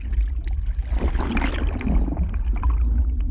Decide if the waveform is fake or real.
real